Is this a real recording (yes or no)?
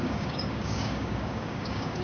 no